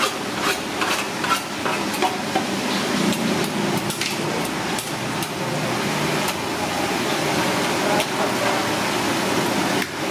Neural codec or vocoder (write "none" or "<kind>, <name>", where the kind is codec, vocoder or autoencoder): none